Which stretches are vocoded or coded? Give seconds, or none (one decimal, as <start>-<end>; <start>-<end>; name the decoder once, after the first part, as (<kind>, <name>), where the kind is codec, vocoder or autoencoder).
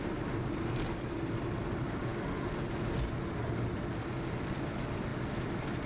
none